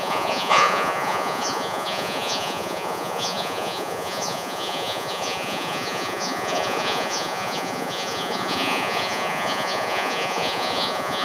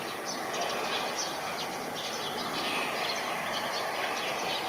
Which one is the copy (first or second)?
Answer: first